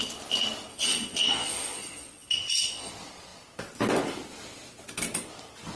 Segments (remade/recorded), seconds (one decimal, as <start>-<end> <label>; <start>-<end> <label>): 0.0-0.7 recorded; 0.7-2.9 remade; 2.9-5.8 recorded